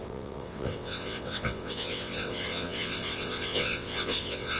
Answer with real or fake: fake